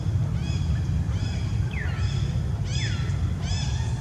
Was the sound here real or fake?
real